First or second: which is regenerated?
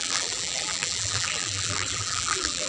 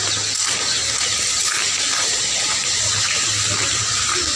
first